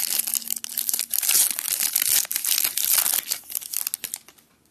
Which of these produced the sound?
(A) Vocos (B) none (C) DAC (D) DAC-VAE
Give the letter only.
B